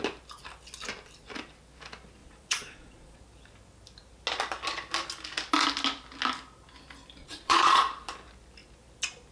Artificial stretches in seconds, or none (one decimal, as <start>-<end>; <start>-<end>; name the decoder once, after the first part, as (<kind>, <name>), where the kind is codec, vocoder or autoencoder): 2.2-3.2 (vocoder, Vocos); 7.2-7.9